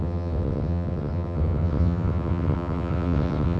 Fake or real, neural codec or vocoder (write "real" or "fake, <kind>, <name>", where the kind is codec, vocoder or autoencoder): fake, vocoder, WaveNeXt